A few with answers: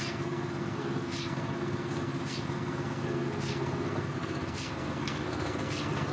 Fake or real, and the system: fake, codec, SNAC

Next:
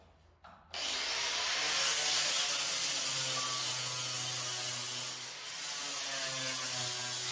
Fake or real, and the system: real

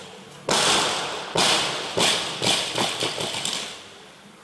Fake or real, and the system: real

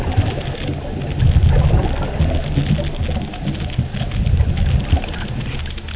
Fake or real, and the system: real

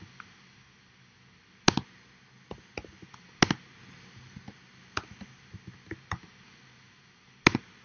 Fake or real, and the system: real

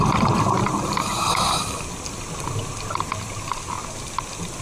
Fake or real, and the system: real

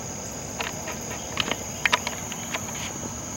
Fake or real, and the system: real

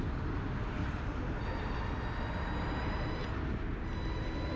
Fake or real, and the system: real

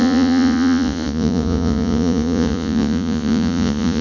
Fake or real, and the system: fake, vocoder, Vocos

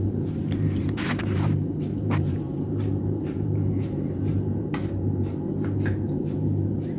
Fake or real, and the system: fake, vocoder, BigVGAN v2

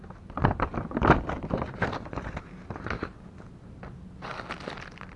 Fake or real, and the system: real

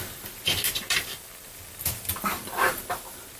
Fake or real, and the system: fake, vocoder, BigVGAN v2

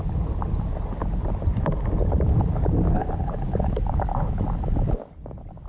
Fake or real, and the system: real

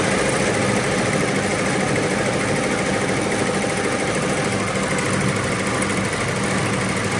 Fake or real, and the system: real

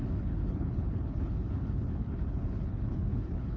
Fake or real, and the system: fake, codec, HILCodec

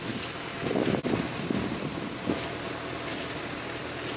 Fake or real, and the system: real